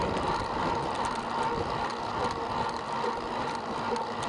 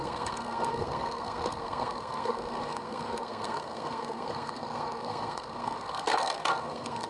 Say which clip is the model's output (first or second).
second